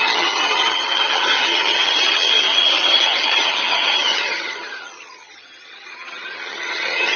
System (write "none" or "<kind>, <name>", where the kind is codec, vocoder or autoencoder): vocoder, HiFi-GAN